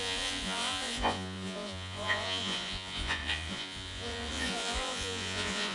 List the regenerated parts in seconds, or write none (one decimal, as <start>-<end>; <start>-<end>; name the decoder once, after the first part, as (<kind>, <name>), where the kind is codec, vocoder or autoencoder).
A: 0.0-5.7 (vocoder, Vocos)